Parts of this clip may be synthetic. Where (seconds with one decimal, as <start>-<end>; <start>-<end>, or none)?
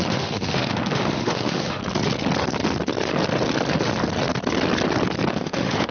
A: 0.0-1.8; 5.3-5.9